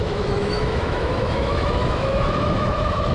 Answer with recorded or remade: remade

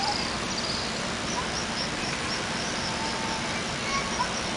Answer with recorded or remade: recorded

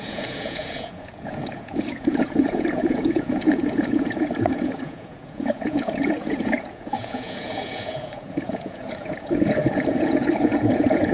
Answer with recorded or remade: remade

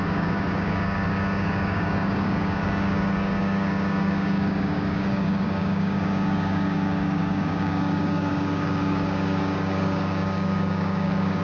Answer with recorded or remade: remade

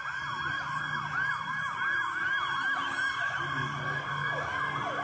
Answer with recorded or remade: recorded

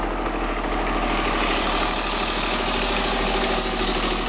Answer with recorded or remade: remade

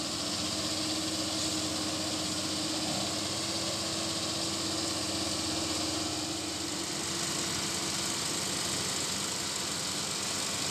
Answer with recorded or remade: recorded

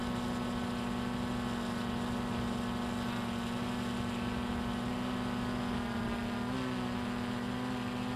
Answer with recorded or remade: recorded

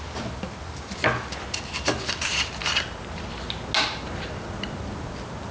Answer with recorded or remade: recorded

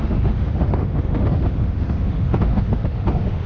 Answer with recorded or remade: remade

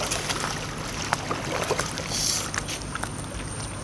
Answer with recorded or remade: recorded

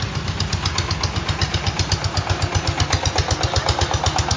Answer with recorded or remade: recorded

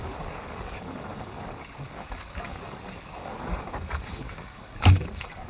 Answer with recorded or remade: remade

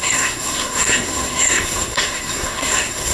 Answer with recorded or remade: remade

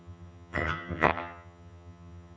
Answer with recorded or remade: remade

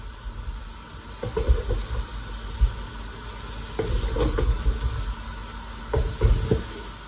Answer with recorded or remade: recorded